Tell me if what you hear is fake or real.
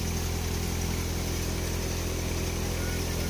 real